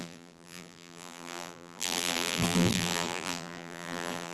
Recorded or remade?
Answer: remade